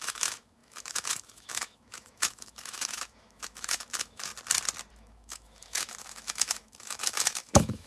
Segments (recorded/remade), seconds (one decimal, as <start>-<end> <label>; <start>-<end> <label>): 0.0-4.3 remade; 4.3-4.9 recorded; 4.9-7.9 remade